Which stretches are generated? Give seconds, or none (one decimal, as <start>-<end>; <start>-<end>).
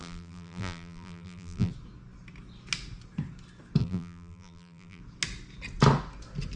0.0-1.7; 3.8-5.0